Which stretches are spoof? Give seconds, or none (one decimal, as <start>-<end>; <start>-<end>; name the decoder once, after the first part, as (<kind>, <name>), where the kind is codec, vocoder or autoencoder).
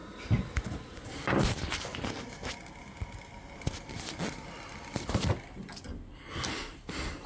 none